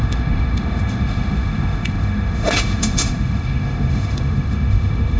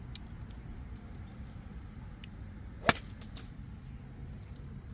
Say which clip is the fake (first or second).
first